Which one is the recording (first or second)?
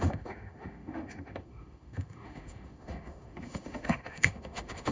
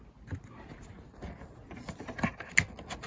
second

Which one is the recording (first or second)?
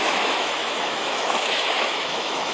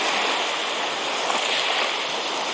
second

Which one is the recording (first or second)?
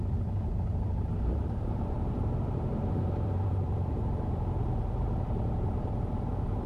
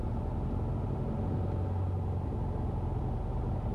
second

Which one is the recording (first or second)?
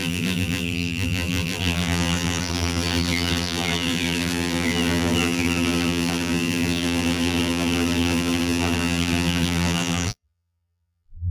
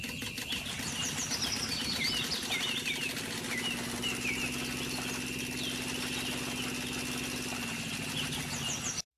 second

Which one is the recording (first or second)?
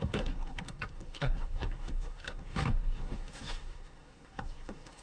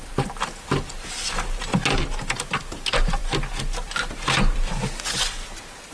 second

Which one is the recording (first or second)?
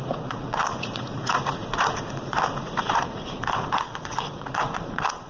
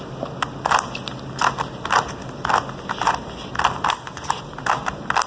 second